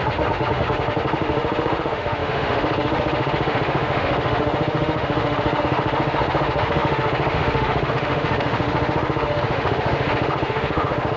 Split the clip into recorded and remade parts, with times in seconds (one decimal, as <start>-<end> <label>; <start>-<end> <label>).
0.0-11.2 remade